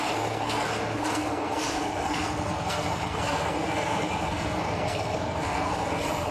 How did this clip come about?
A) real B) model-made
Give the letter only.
B